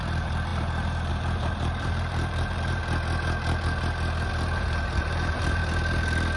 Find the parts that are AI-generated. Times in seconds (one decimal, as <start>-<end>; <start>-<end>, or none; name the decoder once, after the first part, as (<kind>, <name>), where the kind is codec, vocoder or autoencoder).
0.0-2.8 (vocoder, BigVGAN v2); 4.3-5.6